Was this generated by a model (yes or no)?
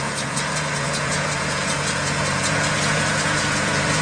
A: yes